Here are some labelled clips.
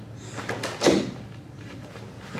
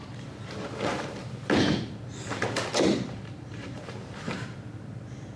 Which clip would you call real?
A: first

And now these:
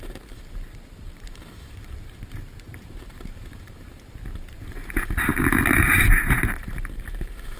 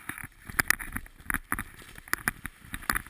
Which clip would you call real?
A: second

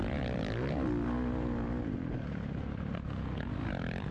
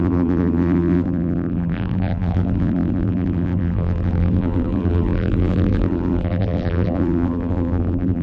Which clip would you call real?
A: first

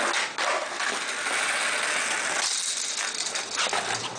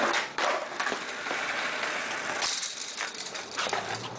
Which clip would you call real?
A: first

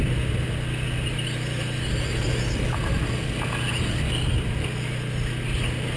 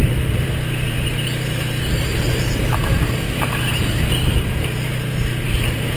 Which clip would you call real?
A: first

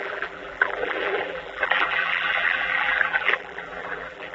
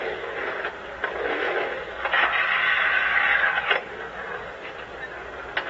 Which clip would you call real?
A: second